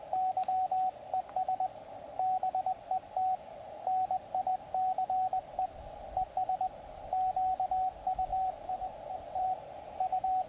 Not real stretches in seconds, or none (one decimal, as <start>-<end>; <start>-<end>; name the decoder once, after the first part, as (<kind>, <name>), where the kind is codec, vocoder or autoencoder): 8.3-10.5 (vocoder, BigVGAN v2)